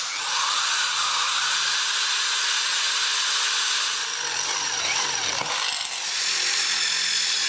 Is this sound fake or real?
real